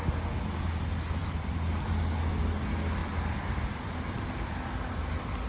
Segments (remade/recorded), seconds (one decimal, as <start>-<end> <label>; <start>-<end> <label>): 0.0-1.2 recorded; 1.2-2.3 remade; 2.3-3.0 recorded; 3.0-4.5 remade; 4.5-5.5 recorded